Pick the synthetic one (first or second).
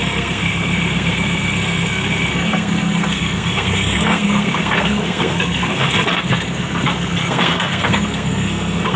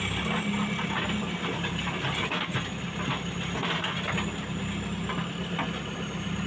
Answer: first